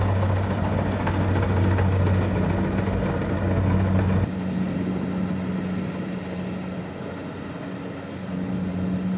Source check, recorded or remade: recorded